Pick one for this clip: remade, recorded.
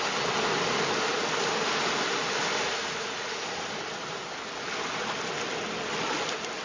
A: recorded